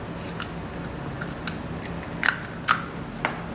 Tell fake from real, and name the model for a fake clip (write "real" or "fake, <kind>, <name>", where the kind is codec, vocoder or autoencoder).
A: real